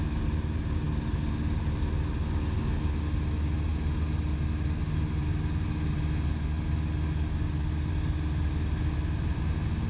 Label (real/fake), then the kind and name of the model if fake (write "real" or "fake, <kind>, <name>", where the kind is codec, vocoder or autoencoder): real